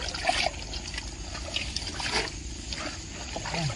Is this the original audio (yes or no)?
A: yes